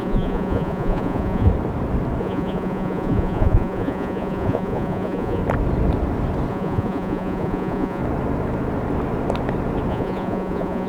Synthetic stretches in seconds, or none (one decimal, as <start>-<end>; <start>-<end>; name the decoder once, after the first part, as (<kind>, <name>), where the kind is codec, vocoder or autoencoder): 0.0-1.5 (vocoder, Vocos); 2.2-5.4; 6.5-8.0; 9.9-10.9